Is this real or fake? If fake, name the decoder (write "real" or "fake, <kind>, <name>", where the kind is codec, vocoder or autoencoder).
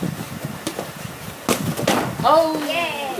real